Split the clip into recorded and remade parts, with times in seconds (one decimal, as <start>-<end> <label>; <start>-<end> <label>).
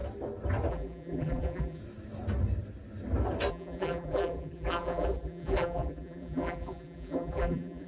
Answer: 0.0-0.7 recorded; 0.7-1.8 remade; 1.8-3.5 recorded; 3.5-7.9 remade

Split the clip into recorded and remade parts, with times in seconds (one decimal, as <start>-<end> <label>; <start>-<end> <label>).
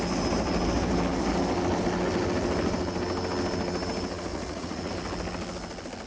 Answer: 0.0-4.3 recorded; 4.3-4.9 remade; 4.9-6.1 recorded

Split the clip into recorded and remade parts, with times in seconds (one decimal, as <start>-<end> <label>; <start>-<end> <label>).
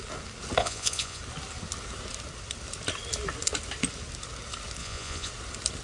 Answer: 0.0-0.6 recorded; 0.6-1.2 remade; 1.2-4.8 recorded; 4.8-5.3 remade; 5.3-5.8 recorded